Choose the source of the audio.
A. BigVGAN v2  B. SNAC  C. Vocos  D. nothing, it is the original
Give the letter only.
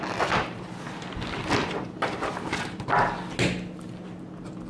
D